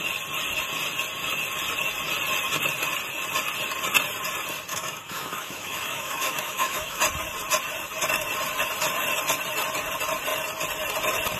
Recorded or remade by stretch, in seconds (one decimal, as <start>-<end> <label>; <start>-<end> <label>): 0.0-4.7 recorded; 4.7-7.0 remade; 7.0-11.4 recorded